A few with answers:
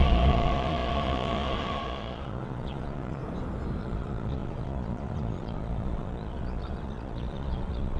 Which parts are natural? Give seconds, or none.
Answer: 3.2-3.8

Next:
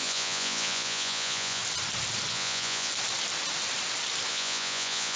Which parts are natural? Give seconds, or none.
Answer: 1.6-2.3; 2.9-4.3

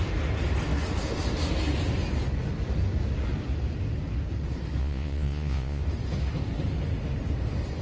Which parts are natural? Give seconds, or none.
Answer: 0.0-4.8; 5.8-7.8

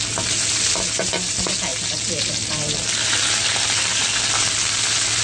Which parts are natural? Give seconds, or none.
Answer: 0.0-5.2

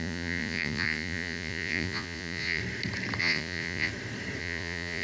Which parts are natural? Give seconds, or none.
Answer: 2.6-3.2; 3.9-4.4